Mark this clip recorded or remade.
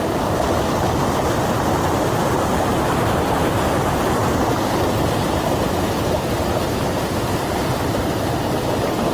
recorded